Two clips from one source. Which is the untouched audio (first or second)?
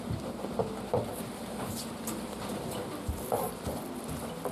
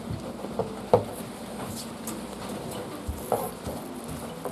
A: second